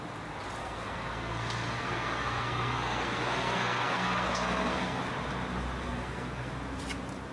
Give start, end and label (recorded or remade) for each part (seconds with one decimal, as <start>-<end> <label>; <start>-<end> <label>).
0.0-0.6 recorded; 0.6-5.0 remade; 5.0-5.8 recorded; 5.8-6.5 remade; 6.5-7.3 recorded